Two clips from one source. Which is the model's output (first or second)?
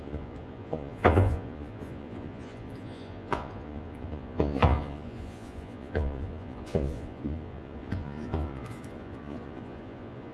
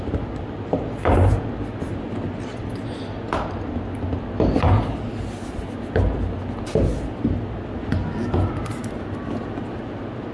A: first